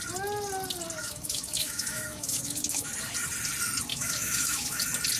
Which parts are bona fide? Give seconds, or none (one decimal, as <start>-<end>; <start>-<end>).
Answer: 0.0-1.0; 2.9-3.9; 4.8-5.2